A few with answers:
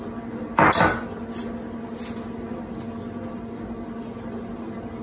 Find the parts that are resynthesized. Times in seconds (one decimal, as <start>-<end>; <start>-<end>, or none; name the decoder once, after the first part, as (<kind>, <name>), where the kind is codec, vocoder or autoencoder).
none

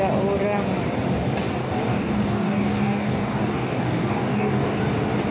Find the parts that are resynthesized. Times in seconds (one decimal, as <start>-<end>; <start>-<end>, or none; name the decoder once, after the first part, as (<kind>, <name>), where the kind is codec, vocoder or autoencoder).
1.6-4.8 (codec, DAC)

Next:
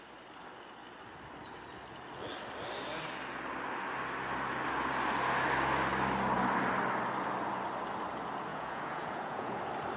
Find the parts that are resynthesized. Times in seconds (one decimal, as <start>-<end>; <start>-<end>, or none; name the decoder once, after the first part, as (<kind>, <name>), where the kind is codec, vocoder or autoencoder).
8.5-9.6 (vocoder, Vocos)